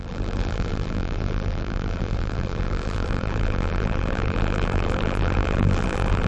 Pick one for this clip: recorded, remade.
remade